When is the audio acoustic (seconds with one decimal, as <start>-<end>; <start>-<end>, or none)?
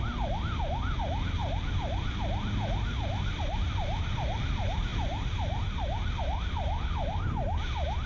0.0-8.1